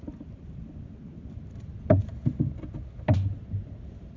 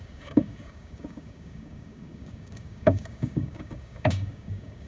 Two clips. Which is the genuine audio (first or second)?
first